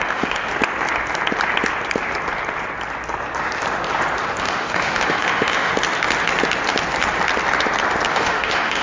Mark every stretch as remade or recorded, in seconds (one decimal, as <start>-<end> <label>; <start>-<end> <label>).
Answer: 0.0-0.5 remade; 0.5-4.4 recorded; 4.4-5.7 remade; 5.7-8.1 recorded; 8.1-8.8 remade